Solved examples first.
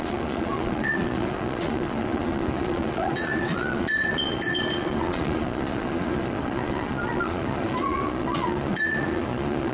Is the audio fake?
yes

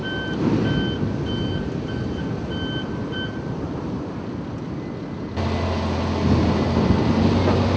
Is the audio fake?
no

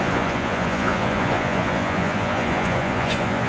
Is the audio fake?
yes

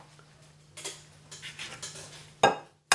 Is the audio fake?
no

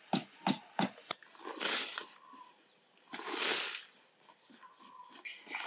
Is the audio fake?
no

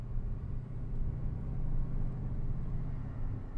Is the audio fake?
no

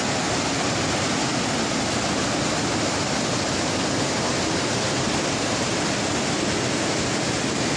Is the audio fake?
no